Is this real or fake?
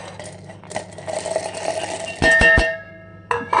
real